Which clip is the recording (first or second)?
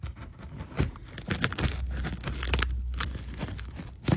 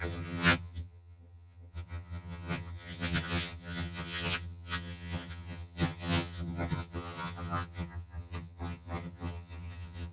first